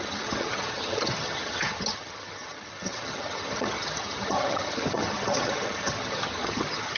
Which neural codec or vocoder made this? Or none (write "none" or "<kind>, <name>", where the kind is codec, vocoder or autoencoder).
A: vocoder, HiFi-GAN